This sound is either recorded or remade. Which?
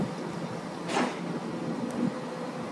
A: recorded